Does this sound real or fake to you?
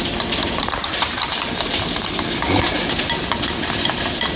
real